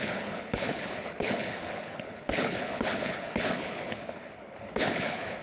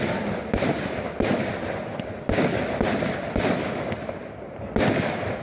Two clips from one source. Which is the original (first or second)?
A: second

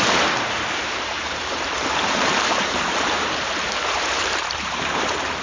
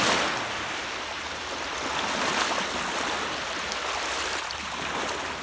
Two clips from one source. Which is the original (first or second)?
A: second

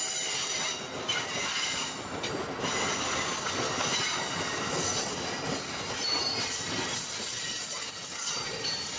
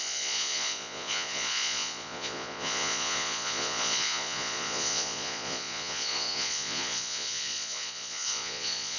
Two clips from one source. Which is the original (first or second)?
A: first